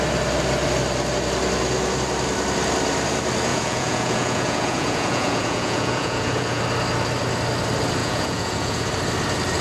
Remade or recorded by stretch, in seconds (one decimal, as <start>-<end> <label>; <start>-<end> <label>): 0.0-3.5 recorded; 3.5-6.6 remade; 6.6-8.0 recorded; 8.0-8.9 remade; 8.9-9.6 recorded